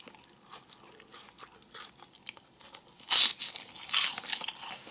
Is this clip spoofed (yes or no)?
no